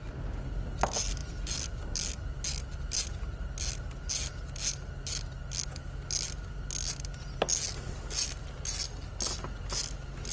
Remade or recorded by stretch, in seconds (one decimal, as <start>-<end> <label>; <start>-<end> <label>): 0.0-10.3 recorded